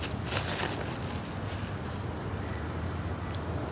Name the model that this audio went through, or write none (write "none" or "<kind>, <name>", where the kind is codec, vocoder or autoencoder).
none